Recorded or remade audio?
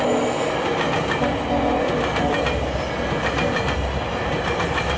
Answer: recorded